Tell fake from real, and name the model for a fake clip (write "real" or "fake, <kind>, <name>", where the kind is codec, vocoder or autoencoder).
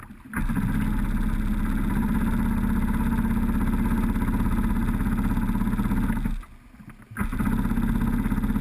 real